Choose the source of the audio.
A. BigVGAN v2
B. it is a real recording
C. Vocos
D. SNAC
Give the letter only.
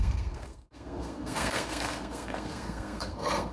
D